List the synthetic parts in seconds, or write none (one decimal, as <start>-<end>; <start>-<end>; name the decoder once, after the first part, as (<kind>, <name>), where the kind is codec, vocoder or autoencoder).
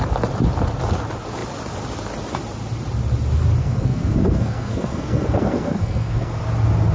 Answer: 3.6-6.4 (codec, SNAC)